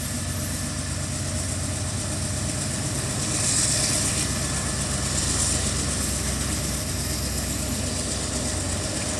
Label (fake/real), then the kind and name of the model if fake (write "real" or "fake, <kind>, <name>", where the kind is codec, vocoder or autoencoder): real